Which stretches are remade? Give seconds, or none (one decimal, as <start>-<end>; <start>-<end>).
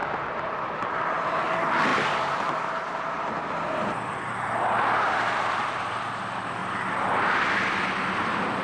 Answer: 0.0-6.6